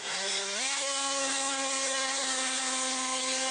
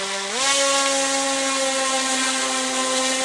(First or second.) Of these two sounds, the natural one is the second